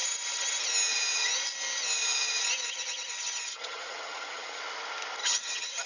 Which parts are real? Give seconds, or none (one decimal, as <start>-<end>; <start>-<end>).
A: 0.0-3.5; 4.6-5.2

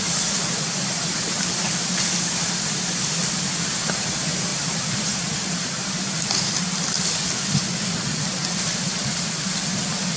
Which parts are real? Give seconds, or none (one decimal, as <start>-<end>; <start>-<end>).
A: 0.0-4.5; 5.2-10.2